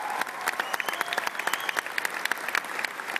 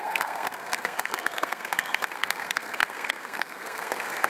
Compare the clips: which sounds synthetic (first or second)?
second